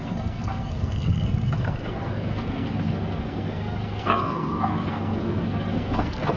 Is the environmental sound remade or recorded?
remade